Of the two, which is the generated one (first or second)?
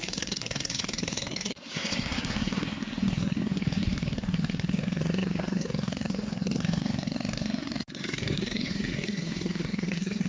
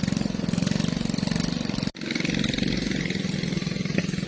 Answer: first